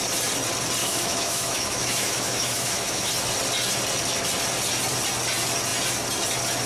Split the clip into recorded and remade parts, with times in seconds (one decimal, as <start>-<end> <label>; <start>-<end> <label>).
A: 0.0-0.8 recorded; 0.8-3.1 remade; 3.1-6.7 recorded